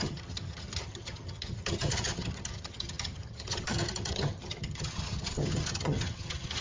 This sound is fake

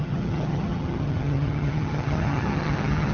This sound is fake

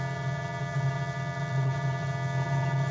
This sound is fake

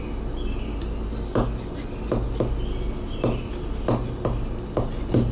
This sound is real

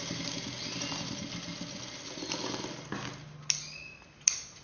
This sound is real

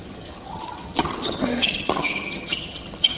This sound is fake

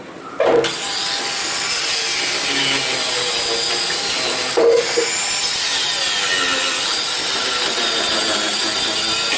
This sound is real